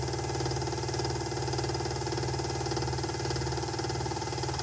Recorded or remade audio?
recorded